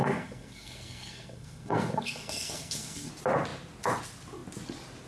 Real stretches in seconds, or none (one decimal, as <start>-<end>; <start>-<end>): 3.1-5.1